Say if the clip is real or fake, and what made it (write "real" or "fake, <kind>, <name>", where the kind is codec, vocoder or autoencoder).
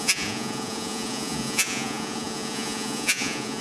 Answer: fake, vocoder, Vocos